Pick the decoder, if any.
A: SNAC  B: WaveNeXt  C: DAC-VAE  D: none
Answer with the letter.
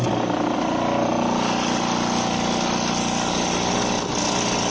D